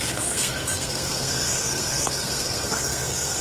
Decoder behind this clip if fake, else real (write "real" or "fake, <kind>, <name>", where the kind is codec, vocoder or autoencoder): fake, codec, SNAC